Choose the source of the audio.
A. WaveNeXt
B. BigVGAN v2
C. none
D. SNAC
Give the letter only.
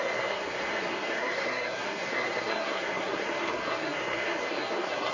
D